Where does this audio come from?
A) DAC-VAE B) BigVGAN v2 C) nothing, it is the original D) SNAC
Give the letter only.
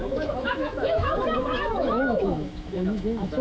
A